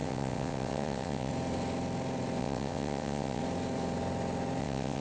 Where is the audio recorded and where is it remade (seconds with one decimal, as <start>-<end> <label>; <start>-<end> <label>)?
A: 0.0-1.3 remade; 1.3-2.4 recorded; 2.4-3.4 remade; 3.4-4.6 recorded; 4.6-5.0 remade